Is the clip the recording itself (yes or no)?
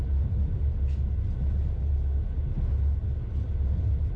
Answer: yes